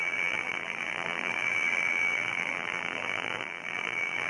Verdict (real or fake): fake